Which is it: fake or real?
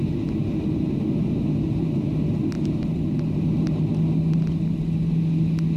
real